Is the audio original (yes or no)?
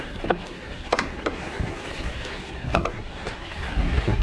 no